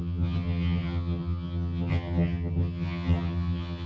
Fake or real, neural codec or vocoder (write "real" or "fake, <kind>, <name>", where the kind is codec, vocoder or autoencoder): fake, vocoder, HiFi-GAN